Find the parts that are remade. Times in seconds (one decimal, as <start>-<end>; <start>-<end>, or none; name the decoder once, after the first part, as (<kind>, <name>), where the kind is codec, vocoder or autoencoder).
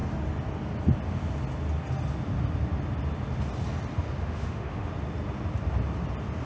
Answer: 4.2-4.9 (autoencoder, DAC-VAE)